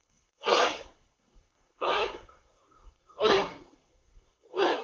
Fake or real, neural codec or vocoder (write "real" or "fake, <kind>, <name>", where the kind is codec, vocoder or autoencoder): fake, codec, SNAC